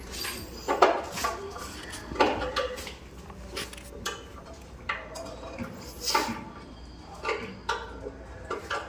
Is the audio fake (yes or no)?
no